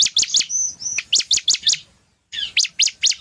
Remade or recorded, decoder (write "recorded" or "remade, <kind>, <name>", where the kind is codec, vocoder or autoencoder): recorded